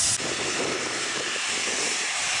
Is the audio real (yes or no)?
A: yes